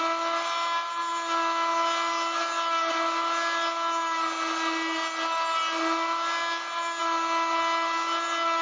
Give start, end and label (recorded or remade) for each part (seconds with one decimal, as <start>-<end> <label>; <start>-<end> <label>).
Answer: 0.0-8.6 recorded

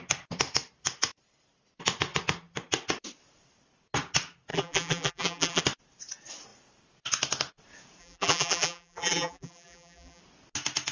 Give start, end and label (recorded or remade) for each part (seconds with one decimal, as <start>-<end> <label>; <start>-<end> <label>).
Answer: 0.0-4.5 recorded; 4.5-5.6 remade; 5.6-8.0 recorded; 8.0-10.2 remade; 10.2-10.9 recorded